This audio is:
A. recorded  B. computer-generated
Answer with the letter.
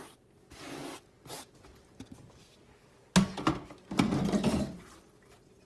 A